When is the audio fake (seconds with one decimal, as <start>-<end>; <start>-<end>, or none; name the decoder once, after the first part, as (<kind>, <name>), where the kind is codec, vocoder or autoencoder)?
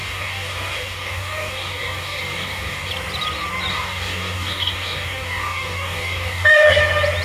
0.0-2.9 (codec, DAC); 3.7-6.8